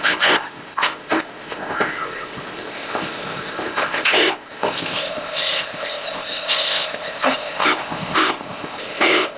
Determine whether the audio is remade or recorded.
remade